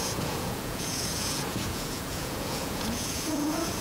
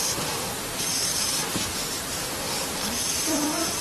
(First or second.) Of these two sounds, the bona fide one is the second